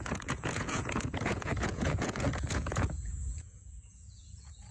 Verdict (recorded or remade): remade